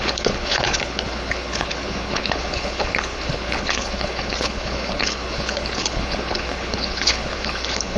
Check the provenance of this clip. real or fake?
fake